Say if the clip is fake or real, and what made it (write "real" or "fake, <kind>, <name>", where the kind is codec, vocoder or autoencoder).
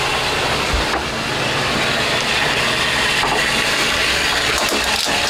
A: real